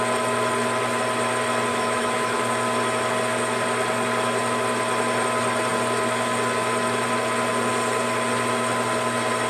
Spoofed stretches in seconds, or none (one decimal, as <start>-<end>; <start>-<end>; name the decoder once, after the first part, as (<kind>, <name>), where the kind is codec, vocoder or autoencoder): 1.7-2.4 (autoencoder, DAC-VAE)